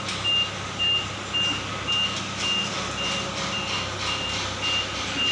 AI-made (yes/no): no